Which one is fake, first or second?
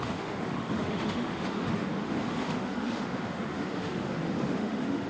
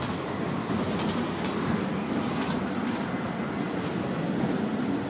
first